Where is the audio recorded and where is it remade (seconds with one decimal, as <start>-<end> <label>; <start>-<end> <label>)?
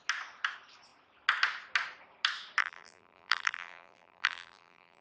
0.0-2.6 recorded; 2.6-5.0 remade